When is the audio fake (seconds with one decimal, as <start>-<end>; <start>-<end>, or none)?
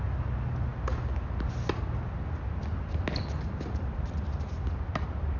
none